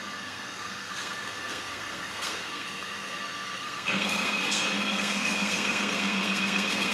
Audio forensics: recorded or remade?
remade